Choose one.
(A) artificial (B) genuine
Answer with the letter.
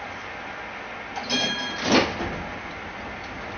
B